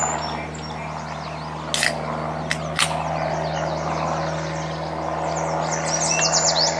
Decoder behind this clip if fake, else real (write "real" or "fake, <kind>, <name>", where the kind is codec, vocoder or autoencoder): real